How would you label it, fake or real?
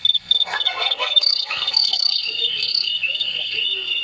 fake